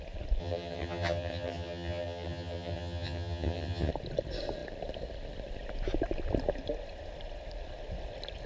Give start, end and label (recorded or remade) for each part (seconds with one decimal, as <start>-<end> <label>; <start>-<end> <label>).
0.0-0.4 recorded; 0.4-3.9 remade; 3.9-8.5 recorded